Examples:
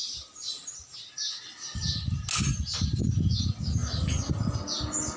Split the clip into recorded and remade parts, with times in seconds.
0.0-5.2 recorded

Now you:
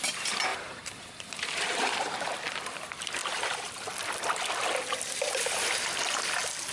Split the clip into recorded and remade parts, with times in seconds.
0.0-0.5 recorded; 0.5-2.3 remade; 2.3-3.2 recorded; 3.2-3.7 remade; 3.7-6.7 recorded

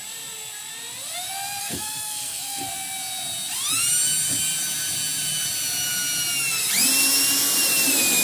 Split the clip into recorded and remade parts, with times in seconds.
0.0-1.6 recorded; 1.6-2.7 remade; 2.7-8.2 recorded

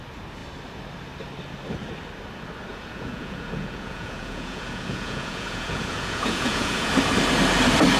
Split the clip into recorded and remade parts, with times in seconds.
0.0-2.7 recorded; 2.7-6.9 remade; 6.9-8.0 recorded

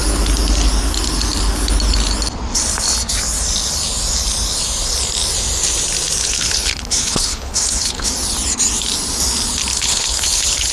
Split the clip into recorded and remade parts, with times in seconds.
0.0-6.2 recorded; 6.2-8.1 remade; 8.1-9.7 recorded; 9.7-10.7 remade

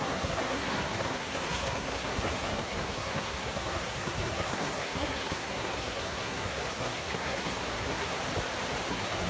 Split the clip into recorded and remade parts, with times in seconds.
0.0-8.2 remade; 8.2-8.9 recorded; 8.9-9.3 remade